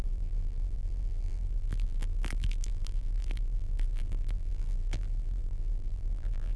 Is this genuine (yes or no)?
no